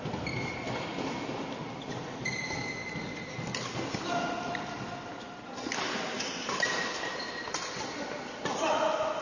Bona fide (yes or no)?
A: yes